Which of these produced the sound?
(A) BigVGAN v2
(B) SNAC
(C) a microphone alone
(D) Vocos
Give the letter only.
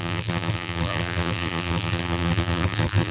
A